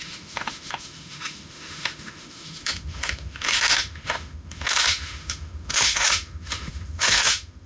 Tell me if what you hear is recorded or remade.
remade